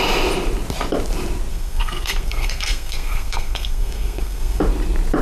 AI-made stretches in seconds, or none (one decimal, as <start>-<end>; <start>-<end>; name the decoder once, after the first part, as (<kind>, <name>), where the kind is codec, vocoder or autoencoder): 1.5-4.6 (codec, SNAC)